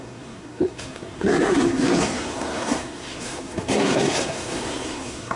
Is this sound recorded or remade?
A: remade